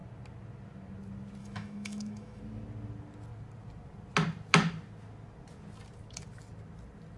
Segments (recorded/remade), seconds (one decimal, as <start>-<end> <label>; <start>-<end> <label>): 0.0-1.4 recorded; 1.4-2.4 remade; 2.4-7.2 recorded